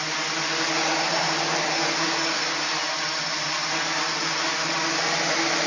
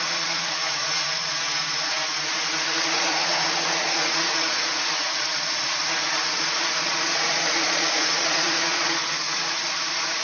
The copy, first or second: second